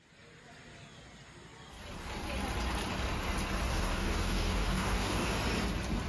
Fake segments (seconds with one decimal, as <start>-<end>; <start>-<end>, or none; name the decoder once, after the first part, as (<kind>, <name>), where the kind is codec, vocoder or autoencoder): 3.7-5.3 (codec, DAC)